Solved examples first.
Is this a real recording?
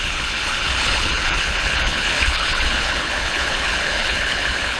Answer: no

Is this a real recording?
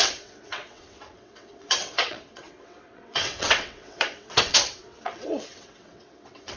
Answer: no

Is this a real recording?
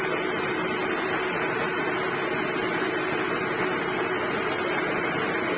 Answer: yes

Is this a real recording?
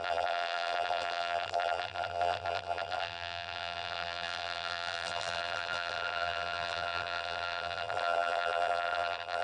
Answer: no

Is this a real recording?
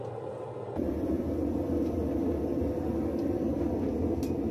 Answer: yes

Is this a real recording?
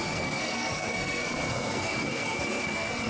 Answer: no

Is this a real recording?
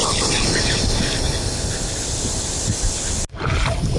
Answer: yes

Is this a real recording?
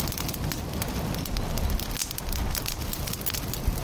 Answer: yes